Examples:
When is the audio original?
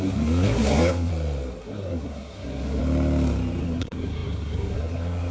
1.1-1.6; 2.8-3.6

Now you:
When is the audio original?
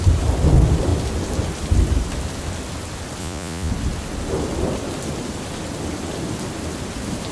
0.0-3.2; 3.7-7.3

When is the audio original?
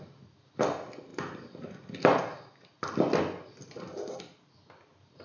0.0-5.2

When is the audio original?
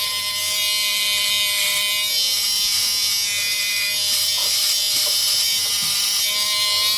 0.0-7.0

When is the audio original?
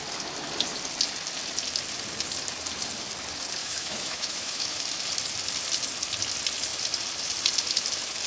0.0-3.6; 4.8-8.3